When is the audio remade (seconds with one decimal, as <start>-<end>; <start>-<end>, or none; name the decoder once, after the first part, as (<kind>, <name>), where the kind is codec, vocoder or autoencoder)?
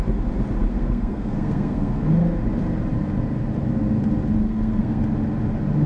0.7-2.0 (codec, SNAC); 4.4-5.0